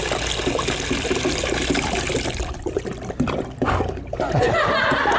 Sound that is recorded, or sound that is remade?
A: recorded